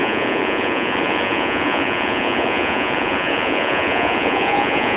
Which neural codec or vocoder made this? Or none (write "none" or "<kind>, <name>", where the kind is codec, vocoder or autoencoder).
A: vocoder, Vocos